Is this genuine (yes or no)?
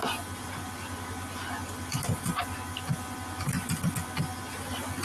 yes